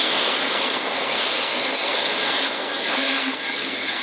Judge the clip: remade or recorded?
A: remade